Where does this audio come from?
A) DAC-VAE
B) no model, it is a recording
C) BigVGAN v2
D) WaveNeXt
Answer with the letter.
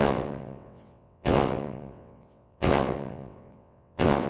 D